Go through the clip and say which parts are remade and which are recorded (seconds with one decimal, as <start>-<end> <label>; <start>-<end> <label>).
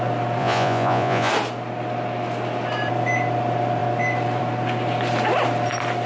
0.0-0.4 recorded; 0.4-1.3 remade; 1.3-6.1 recorded